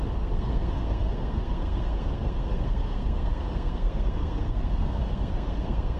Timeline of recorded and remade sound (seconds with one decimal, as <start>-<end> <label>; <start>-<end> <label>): 0.0-6.0 remade

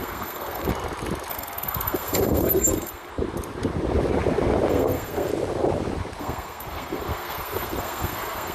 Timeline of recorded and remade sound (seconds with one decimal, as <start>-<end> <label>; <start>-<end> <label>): 0.0-0.7 remade; 0.7-1.3 recorded; 1.3-3.1 remade; 3.1-4.7 recorded; 4.7-5.3 remade; 5.3-6.2 recorded; 6.2-8.5 remade

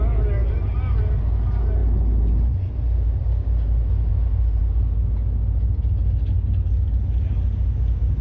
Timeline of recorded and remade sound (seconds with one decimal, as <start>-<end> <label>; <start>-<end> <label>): 0.0-8.2 recorded

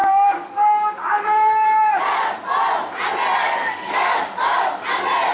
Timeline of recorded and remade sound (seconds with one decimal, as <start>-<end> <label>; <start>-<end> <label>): 0.0-2.0 remade; 2.0-3.4 recorded; 3.4-4.8 remade; 4.8-5.3 recorded

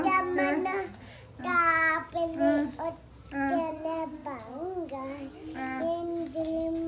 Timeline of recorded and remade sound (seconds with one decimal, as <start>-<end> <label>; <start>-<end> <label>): 0.0-6.9 recorded

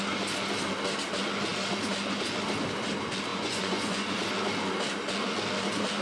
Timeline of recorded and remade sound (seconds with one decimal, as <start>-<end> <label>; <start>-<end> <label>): 0.0-3.3 recorded; 3.3-4.3 remade; 4.3-6.0 recorded

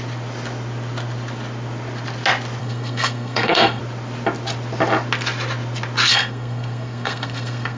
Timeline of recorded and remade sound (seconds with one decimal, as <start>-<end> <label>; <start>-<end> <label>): 0.0-2.6 recorded; 2.6-3.8 remade; 3.8-6.1 recorded; 6.1-7.8 remade

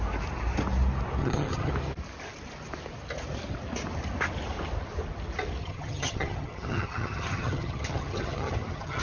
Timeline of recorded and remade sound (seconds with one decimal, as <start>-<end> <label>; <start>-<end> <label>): 0.0-1.2 recorded; 1.2-1.7 remade; 1.7-5.6 recorded; 5.6-9.0 remade